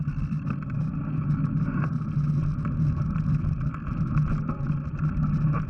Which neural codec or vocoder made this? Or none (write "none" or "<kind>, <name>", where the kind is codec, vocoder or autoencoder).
none